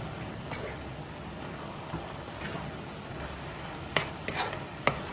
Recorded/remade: recorded